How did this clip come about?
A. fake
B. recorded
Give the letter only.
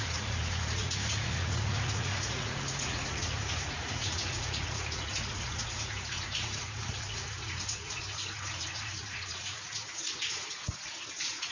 A